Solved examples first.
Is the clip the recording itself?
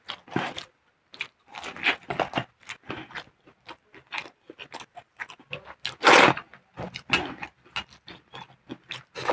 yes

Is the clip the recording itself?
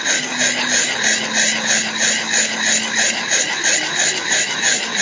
yes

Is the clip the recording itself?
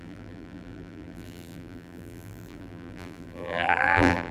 no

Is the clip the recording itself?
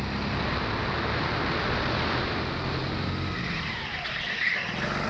yes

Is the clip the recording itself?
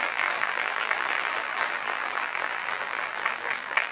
no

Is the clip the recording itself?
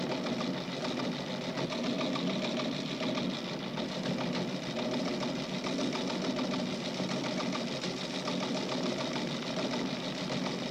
yes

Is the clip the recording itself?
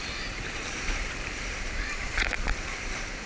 no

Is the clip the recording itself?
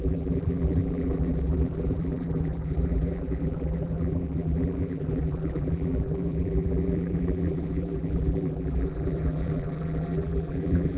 no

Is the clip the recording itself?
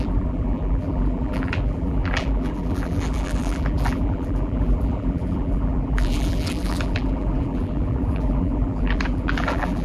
no